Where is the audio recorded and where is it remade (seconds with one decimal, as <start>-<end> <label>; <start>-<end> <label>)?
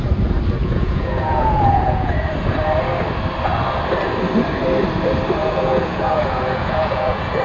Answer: 0.0-0.6 recorded; 0.6-2.1 remade; 2.1-5.4 recorded; 5.4-7.4 remade